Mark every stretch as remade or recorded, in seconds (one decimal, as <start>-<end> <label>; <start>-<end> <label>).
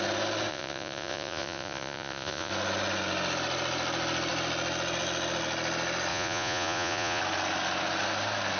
0.0-0.5 recorded; 0.5-2.5 remade; 2.5-6.1 recorded; 6.1-7.2 remade; 7.2-8.6 recorded